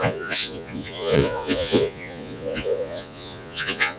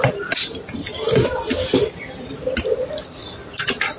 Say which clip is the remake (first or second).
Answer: first